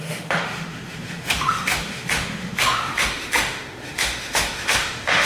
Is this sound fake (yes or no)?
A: yes